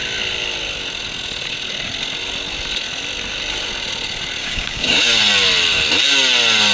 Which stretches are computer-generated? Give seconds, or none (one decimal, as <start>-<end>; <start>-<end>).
4.4-5.2